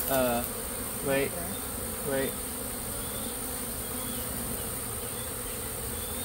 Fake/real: real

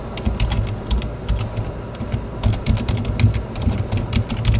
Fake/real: real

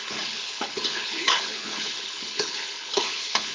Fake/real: fake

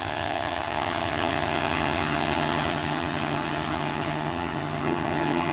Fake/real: fake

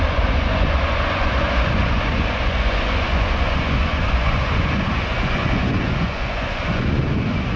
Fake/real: fake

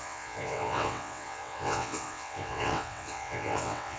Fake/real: fake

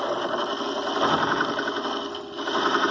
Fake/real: real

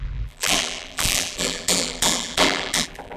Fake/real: fake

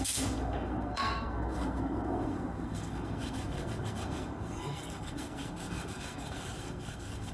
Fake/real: fake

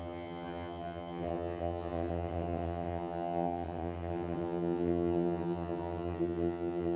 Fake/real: fake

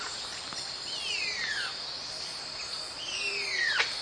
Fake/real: real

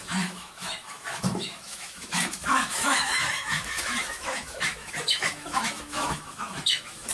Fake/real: fake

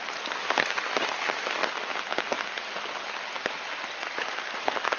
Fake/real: real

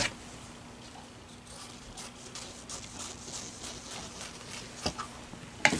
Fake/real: real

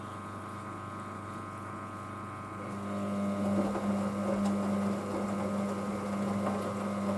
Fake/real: real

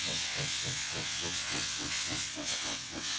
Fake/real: fake